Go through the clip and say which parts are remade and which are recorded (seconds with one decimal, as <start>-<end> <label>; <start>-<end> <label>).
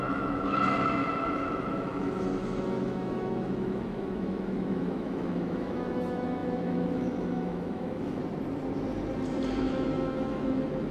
0.0-8.2 remade; 8.2-9.6 recorded; 9.6-10.9 remade